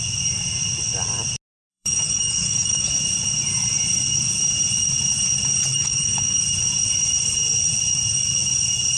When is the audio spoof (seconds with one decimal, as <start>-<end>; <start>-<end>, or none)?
1.7-2.9; 5.7-6.4